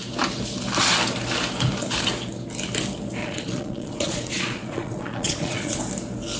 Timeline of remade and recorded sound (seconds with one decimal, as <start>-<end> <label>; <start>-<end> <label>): 0.0-3.2 recorded; 3.2-5.8 remade; 5.8-6.4 recorded